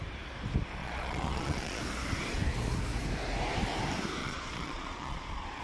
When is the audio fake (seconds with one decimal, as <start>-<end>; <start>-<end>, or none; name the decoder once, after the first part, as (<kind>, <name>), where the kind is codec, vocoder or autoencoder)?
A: 0.8-1.8 (vocoder, Vocos); 4.2-5.6